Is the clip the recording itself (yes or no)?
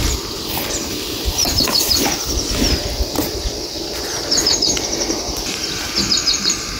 yes